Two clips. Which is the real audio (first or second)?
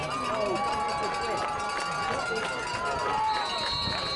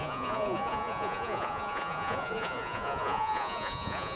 first